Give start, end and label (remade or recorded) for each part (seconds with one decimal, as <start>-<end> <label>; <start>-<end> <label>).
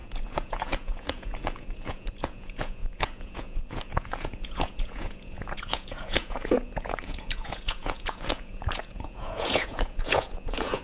0.0-10.8 remade